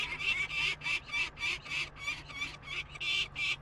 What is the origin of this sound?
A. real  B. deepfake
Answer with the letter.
A